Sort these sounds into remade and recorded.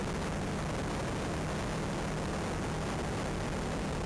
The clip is recorded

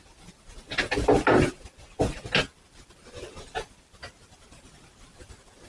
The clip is recorded